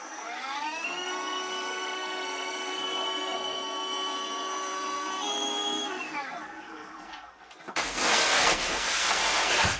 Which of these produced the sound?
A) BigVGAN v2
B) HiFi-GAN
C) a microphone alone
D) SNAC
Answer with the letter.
D